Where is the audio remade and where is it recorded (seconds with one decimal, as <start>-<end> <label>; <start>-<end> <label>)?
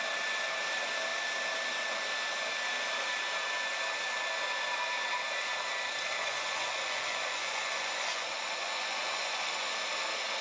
0.0-6.2 recorded; 6.2-9.7 remade; 9.7-10.4 recorded